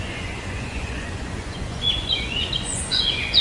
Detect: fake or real fake